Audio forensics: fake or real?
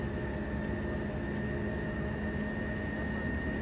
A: real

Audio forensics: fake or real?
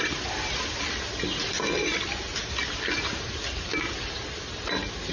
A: real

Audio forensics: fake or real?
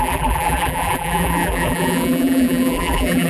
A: fake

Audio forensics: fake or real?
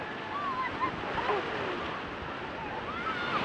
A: real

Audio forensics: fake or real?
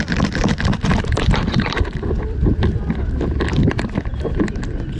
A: fake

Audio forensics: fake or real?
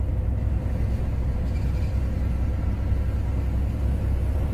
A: real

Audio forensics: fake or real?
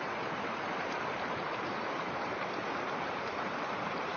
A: fake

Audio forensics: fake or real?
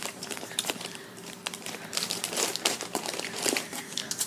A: fake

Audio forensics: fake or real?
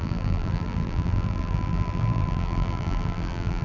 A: fake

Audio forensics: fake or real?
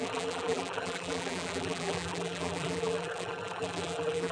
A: fake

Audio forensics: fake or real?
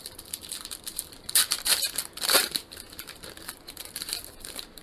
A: fake